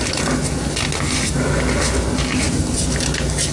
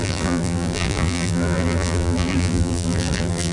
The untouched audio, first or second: first